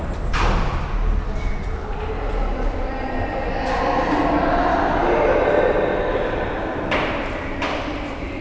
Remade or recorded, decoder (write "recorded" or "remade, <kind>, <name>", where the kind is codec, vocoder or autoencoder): recorded